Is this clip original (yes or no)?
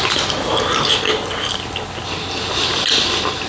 yes